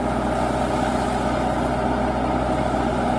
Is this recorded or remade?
recorded